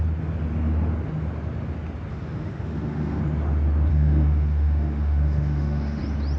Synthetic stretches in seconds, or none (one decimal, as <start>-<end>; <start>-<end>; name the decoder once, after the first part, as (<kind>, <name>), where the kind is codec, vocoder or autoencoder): 2.1-3.2 (autoencoder, DAC-VAE); 3.9-6.0